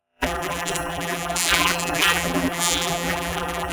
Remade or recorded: remade